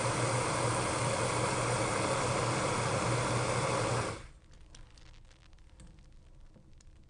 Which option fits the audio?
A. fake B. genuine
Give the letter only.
B